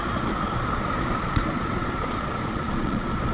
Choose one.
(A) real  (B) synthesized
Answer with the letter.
B